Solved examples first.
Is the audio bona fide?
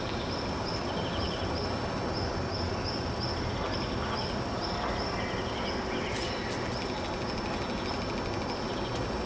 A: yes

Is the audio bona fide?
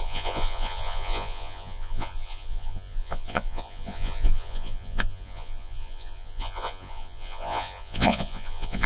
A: no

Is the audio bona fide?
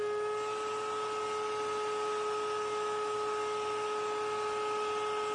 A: yes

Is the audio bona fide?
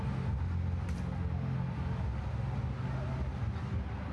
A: yes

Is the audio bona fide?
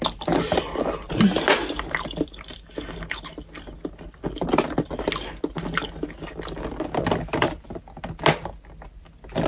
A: yes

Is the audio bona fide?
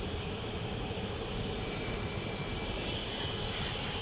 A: yes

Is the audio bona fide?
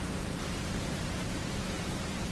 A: no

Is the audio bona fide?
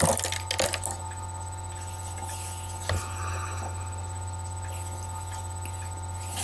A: yes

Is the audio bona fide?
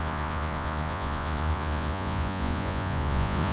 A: no